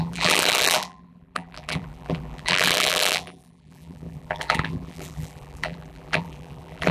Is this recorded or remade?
remade